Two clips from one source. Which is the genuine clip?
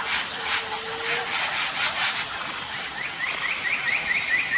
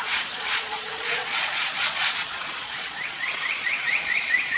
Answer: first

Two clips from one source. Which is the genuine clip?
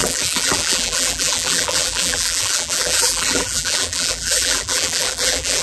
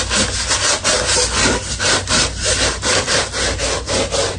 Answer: second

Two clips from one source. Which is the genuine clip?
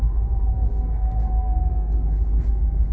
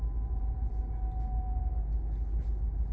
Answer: second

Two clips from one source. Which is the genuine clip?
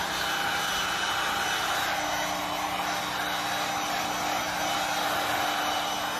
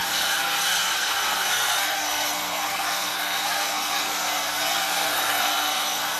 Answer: first